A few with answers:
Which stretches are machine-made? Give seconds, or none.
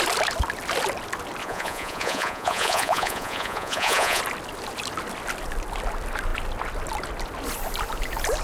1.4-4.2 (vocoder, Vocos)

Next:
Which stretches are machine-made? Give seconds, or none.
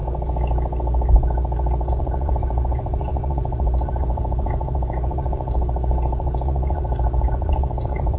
1.9-8.2 (vocoder, Vocos)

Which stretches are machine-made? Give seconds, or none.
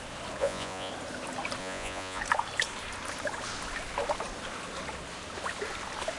0.4-0.9 (vocoder, Vocos); 1.6-2.2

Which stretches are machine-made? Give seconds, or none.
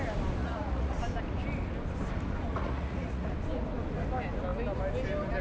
0.4-1.0 (vocoder, Vocos); 2.5-3.3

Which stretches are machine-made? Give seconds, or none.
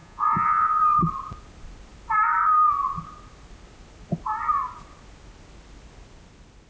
0.0-0.8 (vocoder, Vocos)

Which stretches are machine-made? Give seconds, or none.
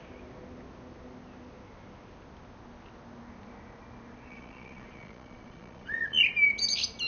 4.3-6.2 (vocoder, Vocos)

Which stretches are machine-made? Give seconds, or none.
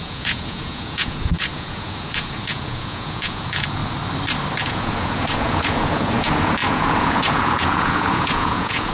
0.0-3.8 (vocoder, Vocos); 4.6-8.9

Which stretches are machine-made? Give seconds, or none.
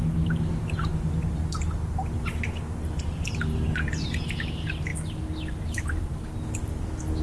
none